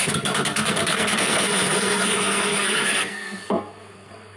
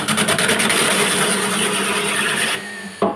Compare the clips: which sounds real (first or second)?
second